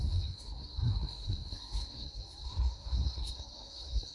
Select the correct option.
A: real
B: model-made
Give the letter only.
B